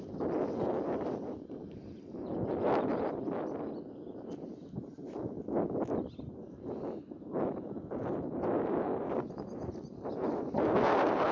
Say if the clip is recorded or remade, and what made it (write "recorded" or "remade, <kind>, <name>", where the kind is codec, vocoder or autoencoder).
recorded